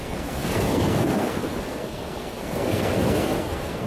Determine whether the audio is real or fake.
fake